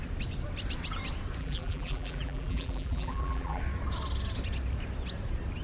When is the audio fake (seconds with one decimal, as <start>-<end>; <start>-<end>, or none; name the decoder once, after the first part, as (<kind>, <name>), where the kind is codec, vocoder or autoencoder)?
1.4-3.6 (vocoder, BigVGAN v2)